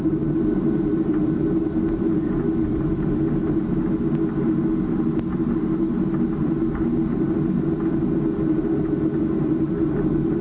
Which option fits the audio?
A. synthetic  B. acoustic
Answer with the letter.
B